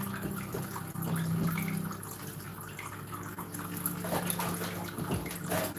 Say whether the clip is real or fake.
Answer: real